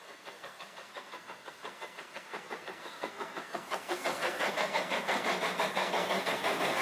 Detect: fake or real fake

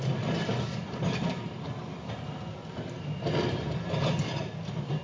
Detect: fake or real real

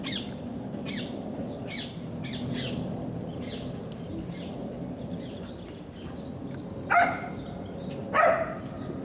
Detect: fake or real real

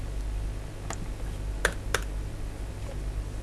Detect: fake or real real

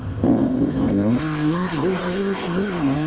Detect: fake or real fake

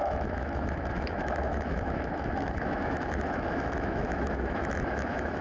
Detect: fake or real fake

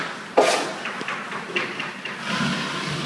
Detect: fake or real real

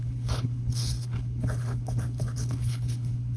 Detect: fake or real fake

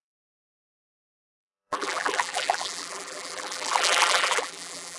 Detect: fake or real fake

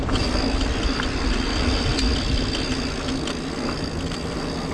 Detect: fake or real real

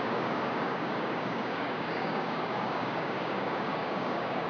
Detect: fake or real fake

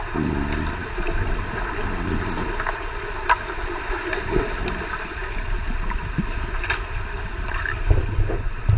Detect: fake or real real